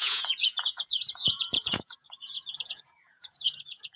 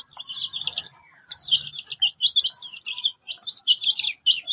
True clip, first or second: second